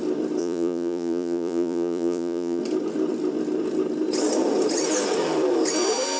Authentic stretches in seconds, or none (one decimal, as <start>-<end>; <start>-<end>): 0.0-0.4; 2.6-6.2

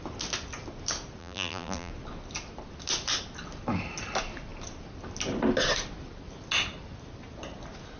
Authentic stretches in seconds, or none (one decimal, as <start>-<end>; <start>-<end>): 0.0-1.2; 1.9-8.0

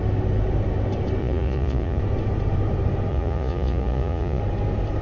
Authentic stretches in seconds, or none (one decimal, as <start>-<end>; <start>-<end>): 0.0-1.2; 2.0-3.1; 4.4-5.0

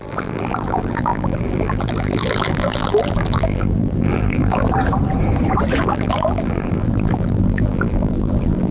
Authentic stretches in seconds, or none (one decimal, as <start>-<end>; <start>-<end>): 4.7-5.8

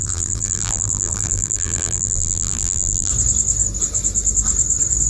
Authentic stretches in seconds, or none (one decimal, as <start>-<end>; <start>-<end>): 3.1-5.1

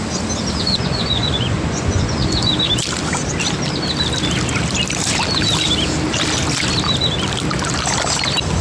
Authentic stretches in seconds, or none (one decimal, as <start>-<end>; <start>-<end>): 0.0-0.6; 2.5-8.6

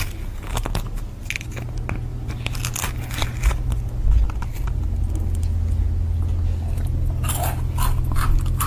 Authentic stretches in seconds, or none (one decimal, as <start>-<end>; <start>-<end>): 0.0-8.7